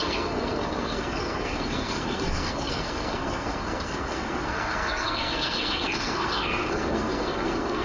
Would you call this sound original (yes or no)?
no